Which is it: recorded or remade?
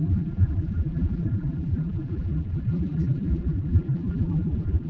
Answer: remade